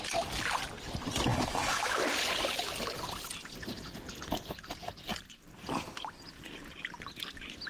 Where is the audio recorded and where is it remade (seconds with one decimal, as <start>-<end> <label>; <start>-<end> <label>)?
0.0-1.3 recorded; 1.3-2.0 remade; 2.0-7.7 recorded